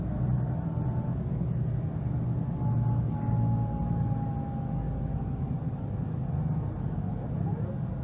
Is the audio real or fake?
real